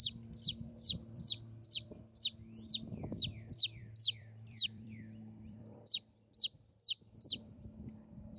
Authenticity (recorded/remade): remade